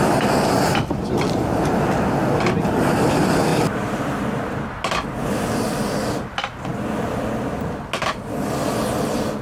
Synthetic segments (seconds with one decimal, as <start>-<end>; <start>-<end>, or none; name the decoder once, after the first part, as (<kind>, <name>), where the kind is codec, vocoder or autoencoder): 3.5-4.1 (vocoder, BigVGAN v2)